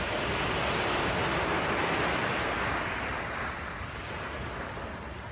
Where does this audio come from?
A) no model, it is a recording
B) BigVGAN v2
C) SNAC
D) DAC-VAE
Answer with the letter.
A